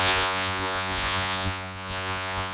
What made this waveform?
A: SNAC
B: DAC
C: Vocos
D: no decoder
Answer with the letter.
C